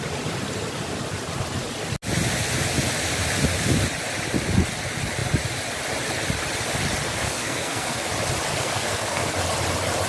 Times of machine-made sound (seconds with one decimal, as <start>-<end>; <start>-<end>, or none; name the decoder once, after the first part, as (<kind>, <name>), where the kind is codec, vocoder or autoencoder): 7.1-8.1 (codec, SNAC); 8.5-9.3